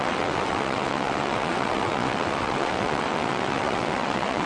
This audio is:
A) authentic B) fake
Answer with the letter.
B